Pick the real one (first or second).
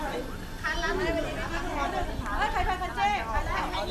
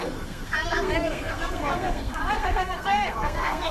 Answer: first